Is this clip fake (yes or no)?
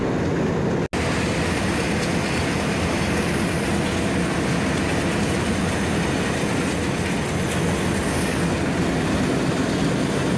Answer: no